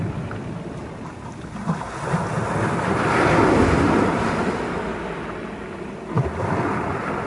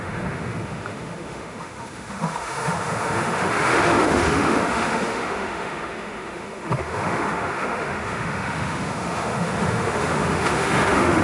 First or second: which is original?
first